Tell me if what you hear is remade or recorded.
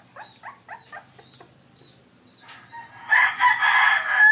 recorded